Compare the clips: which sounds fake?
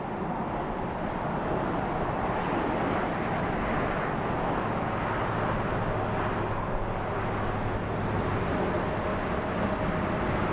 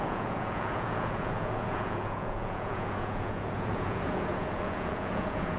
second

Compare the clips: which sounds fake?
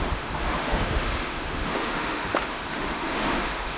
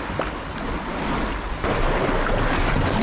first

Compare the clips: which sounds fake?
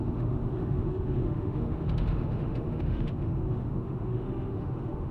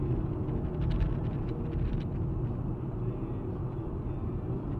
first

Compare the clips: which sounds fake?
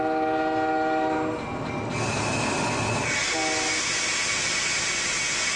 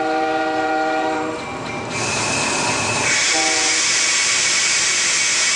second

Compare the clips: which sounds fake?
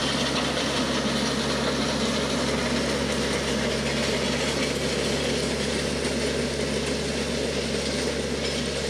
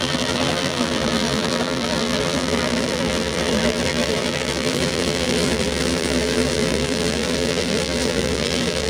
second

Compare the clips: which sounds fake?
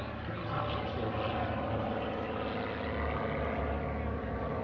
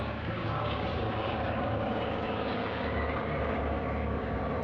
second